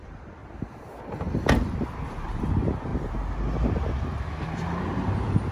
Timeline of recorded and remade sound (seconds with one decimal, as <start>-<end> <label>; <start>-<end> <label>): 0.0-0.4 remade; 0.4-1.9 recorded; 1.9-2.9 remade; 2.9-4.8 recorded; 4.8-5.5 remade